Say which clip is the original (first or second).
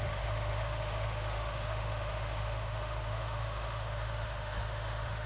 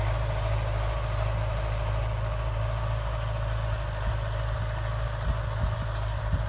second